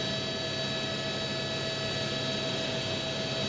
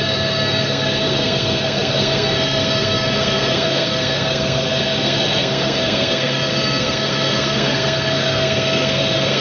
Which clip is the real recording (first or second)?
first